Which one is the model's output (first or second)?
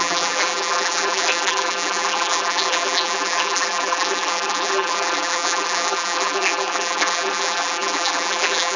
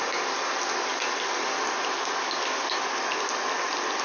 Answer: first